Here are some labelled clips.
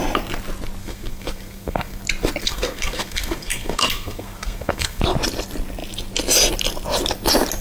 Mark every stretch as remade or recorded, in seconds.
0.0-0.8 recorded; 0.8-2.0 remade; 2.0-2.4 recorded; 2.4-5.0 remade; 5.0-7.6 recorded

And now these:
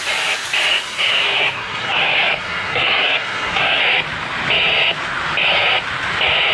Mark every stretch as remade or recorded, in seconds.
0.0-0.7 recorded; 0.7-3.8 remade; 3.8-6.5 recorded

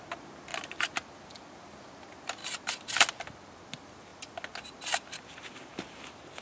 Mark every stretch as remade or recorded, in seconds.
0.0-6.4 recorded

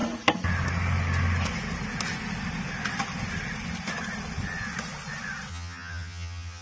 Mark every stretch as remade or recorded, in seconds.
0.0-5.5 recorded; 5.5-6.6 remade

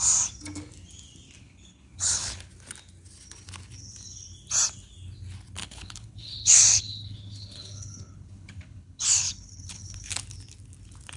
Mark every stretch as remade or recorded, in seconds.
0.0-1.4 recorded; 1.4-2.5 remade; 2.5-5.6 recorded; 5.6-10.1 remade; 10.1-11.2 recorded

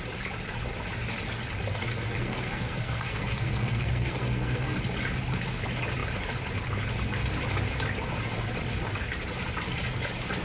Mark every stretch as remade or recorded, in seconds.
0.0-1.9 recorded; 1.9-4.8 remade; 4.8-10.4 recorded